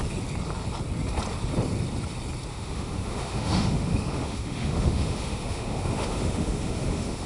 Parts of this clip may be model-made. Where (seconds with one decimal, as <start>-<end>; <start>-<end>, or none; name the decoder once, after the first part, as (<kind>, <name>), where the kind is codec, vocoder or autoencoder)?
2.5-7.3 (autoencoder, DAC-VAE)